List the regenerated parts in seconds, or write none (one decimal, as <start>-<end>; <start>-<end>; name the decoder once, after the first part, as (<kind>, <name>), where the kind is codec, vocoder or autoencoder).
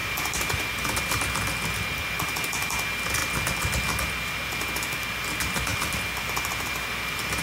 0.0-1.0 (vocoder, BigVGAN v2); 5.7-7.4